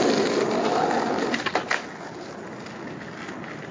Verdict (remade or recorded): recorded